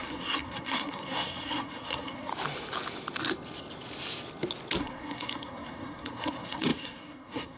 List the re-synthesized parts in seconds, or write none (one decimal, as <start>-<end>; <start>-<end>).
0.0-2.3; 4.8-7.6